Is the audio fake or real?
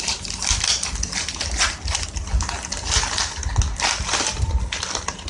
real